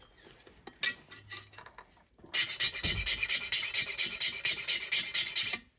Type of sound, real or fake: real